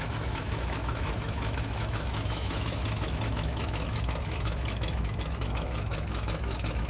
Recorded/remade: remade